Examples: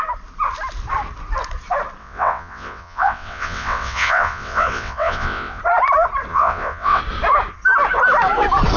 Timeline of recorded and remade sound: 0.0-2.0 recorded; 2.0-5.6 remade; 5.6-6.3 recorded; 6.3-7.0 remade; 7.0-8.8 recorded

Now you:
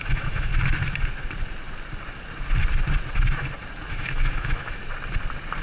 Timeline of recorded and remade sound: 0.0-0.5 remade; 0.5-3.9 recorded; 3.9-4.8 remade; 4.8-5.6 recorded

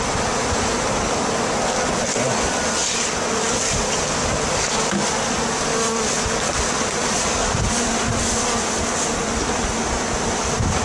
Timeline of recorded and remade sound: 0.0-10.8 recorded

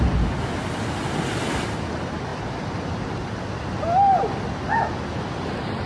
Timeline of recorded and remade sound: 0.0-5.9 recorded

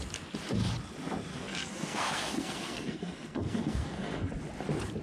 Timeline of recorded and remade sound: 0.0-1.3 recorded; 1.3-4.3 remade; 4.3-5.0 recorded

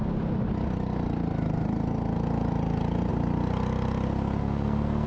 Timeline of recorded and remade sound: 0.0-4.4 recorded; 4.4-5.1 remade

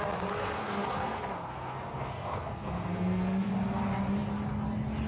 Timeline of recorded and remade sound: 0.0-0.4 recorded; 0.4-3.5 remade; 3.5-5.1 recorded